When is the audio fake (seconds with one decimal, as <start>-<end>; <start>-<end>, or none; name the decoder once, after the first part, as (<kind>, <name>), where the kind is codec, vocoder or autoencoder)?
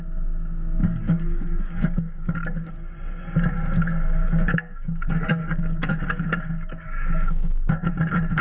0.8-2.7 (codec, DAC); 4.2-7.9